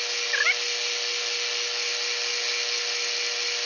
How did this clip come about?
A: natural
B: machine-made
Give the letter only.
A